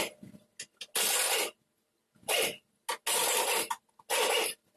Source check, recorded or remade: recorded